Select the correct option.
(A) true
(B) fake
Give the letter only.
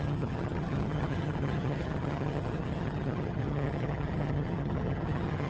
B